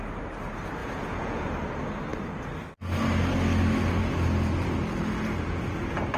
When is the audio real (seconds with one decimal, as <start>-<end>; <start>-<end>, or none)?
0.0-0.8; 1.5-6.2